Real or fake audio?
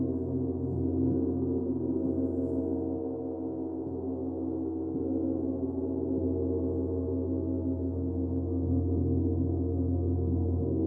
real